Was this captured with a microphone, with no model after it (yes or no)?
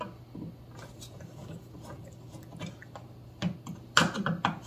yes